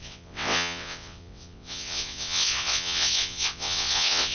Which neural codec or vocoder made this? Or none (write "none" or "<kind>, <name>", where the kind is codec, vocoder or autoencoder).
vocoder, WaveNeXt